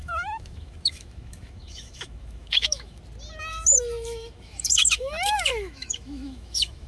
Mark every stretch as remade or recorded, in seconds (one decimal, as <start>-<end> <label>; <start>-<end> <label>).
0.0-3.0 remade; 3.0-3.5 recorded; 3.5-6.9 remade